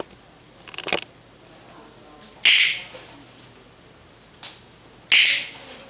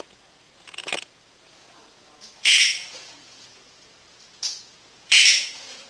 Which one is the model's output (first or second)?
second